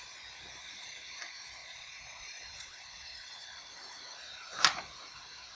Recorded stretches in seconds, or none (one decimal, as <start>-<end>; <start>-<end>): 0.0-1.6; 3.4-5.5